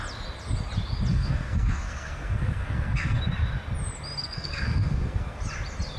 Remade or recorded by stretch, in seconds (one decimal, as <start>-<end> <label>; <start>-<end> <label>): 0.0-1.1 recorded; 1.1-3.2 remade; 3.2-4.2 recorded; 4.2-5.4 remade; 5.4-6.0 recorded